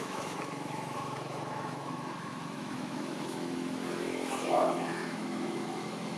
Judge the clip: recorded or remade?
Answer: remade